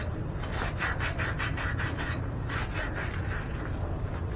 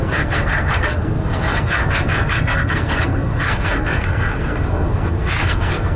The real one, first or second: first